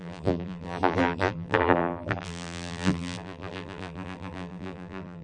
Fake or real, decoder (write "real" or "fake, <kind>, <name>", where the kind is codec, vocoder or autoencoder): fake, vocoder, BigVGAN v2